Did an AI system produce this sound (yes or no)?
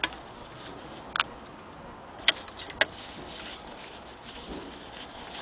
no